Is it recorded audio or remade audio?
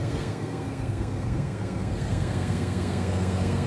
remade